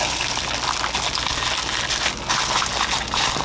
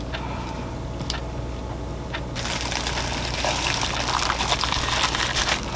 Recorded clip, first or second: first